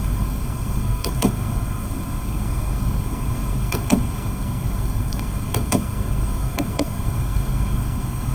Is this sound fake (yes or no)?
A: yes